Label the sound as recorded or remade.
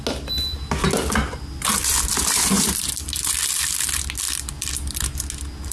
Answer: recorded